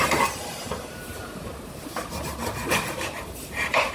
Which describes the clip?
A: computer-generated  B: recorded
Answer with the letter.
A